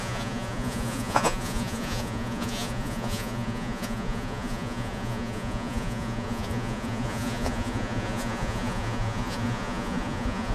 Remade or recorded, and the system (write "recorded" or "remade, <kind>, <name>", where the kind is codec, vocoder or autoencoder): remade, vocoder, Vocos